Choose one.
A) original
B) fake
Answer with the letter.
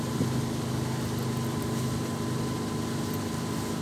A